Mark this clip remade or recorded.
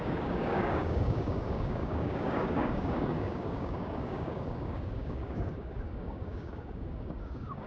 remade